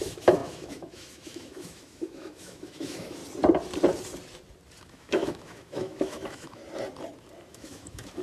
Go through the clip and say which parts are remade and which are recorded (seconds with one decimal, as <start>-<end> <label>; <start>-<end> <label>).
0.0-3.2 remade; 3.2-4.8 recorded; 4.8-6.6 remade; 6.6-7.5 recorded; 7.5-8.2 remade